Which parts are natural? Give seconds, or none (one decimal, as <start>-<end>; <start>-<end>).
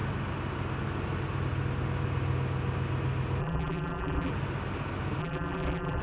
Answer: 0.0-3.4; 4.3-5.2